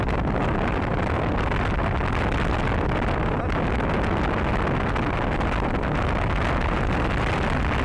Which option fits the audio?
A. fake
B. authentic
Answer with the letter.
B